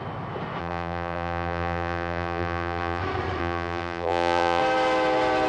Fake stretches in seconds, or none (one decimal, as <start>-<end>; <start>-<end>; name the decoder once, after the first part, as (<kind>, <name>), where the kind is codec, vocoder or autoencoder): 0.6-3.0 (vocoder, BigVGAN v2); 3.4-4.6